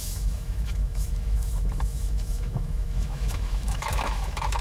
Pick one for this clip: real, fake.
fake